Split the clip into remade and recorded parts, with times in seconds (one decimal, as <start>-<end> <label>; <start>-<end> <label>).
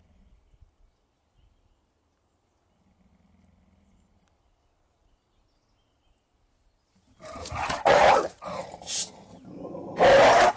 0.0-7.4 recorded; 7.4-8.7 remade; 8.7-10.6 recorded